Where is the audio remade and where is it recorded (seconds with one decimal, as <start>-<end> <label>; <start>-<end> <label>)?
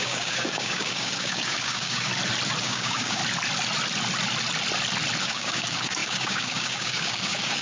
0.0-2.1 remade; 2.1-2.6 recorded; 2.6-3.2 remade; 3.2-5.2 recorded; 5.2-7.6 remade